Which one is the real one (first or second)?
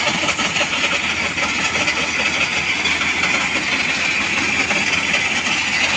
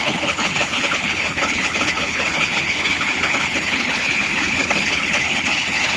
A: first